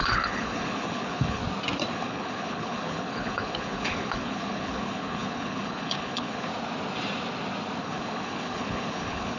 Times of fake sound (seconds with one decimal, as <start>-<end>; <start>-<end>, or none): 0.0-1.4; 1.9-6.5; 7.8-9.4